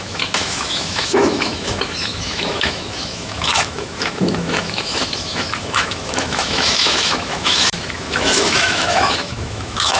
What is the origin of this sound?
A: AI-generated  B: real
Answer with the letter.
A